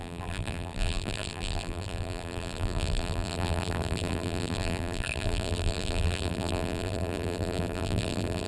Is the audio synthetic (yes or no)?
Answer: yes